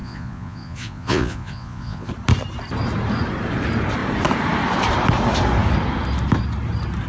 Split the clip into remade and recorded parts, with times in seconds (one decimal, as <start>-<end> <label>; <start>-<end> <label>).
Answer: 0.0-2.1 remade; 2.1-7.1 recorded